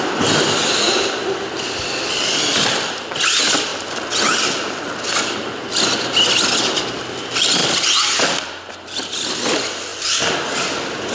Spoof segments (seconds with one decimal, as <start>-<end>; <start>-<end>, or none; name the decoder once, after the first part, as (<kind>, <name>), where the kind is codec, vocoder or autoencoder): none

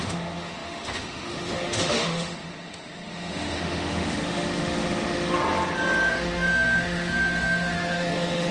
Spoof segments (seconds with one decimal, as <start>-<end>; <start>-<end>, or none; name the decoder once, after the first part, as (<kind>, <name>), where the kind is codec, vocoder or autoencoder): 0.0-5.4 (autoencoder, DAC-VAE); 6.1-8.5

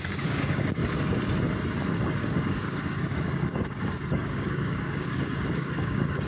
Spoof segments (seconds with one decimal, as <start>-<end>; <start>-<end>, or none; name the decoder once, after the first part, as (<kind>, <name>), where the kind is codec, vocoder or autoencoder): 0.0-0.8 (codec, DAC); 2.2-6.3

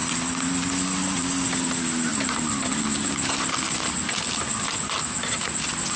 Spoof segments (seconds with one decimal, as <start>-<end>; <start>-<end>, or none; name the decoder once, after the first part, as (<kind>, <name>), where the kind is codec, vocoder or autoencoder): 0.0-0.7 (vocoder, BigVGAN v2)

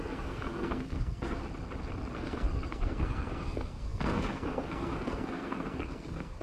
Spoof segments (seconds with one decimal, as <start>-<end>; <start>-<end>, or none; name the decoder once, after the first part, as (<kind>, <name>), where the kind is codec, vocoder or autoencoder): 0.0-1.4 (codec, SNAC); 2.1-6.4

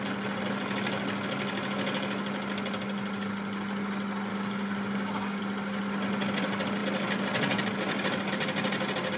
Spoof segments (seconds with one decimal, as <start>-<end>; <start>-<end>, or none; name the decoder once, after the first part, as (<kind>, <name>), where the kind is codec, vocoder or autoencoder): 4.3-5.4 (codec, DAC)

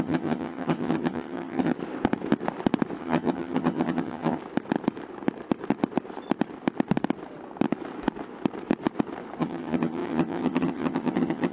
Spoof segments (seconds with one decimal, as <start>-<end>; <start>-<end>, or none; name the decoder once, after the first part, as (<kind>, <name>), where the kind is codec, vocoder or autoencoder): 0.0-1.7 (vocoder, HiFi-GAN); 3.0-4.4; 9.4-11.5